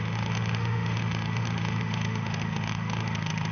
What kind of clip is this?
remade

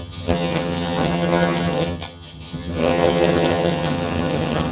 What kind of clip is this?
remade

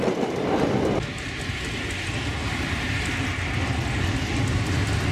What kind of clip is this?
recorded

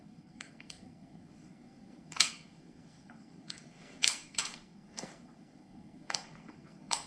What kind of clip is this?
remade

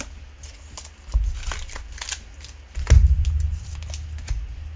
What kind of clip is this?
recorded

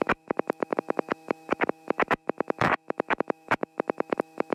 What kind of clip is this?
remade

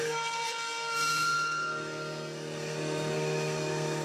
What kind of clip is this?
remade